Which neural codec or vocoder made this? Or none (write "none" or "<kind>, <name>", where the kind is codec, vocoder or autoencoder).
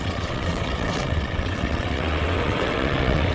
vocoder, WaveNeXt